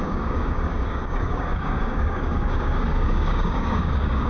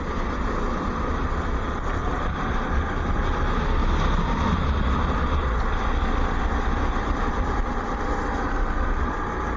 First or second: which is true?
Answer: second